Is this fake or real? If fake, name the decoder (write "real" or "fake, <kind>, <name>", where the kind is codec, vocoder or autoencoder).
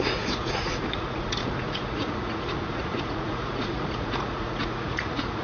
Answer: fake, vocoder, Vocos